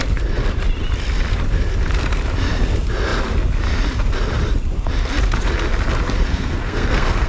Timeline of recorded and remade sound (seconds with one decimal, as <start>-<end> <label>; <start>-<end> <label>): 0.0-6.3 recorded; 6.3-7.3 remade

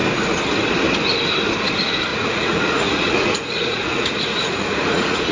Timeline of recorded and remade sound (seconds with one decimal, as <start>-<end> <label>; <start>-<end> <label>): 0.0-2.1 recorded; 2.1-5.3 remade

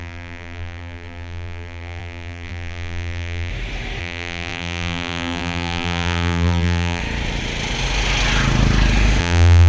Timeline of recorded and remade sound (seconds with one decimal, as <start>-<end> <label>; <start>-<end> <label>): 0.0-3.5 remade; 3.5-4.0 recorded; 4.0-7.0 remade; 7.0-9.2 recorded; 9.2-9.7 remade